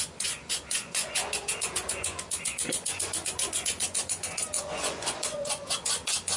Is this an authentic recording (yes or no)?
no